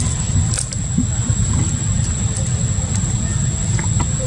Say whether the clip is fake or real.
real